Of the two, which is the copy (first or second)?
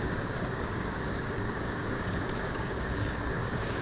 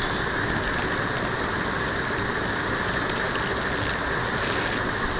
first